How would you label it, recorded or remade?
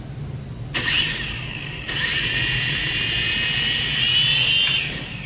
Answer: recorded